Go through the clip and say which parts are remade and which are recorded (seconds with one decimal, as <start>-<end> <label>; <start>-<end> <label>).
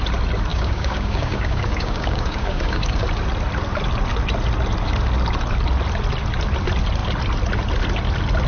0.0-0.5 recorded; 0.5-3.0 remade; 3.0-8.5 recorded